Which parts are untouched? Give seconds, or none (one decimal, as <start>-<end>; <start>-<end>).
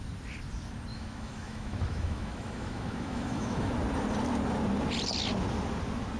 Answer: 0.0-0.9; 3.7-6.2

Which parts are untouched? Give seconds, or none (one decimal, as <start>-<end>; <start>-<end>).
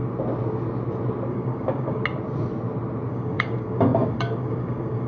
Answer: 0.0-1.3; 2.0-3.1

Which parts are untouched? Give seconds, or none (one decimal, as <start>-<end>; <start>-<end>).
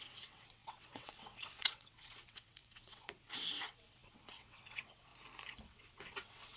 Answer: 5.1-5.6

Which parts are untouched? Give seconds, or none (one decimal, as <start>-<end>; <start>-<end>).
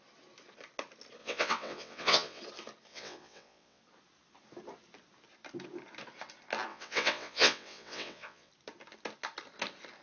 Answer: 0.0-1.2; 2.4-2.9; 3.8-6.7; 8.5-10.0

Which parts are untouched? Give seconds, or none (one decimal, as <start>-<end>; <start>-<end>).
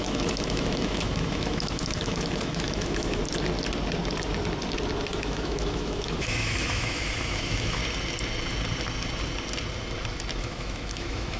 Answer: 3.2-5.1; 7.8-10.4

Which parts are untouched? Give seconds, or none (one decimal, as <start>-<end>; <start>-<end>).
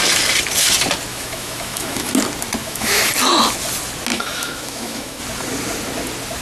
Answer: 0.0-1.1; 2.1-2.6; 3.1-4.1; 5.2-6.4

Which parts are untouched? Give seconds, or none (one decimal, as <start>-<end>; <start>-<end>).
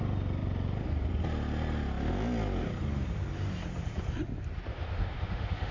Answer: 0.0-4.7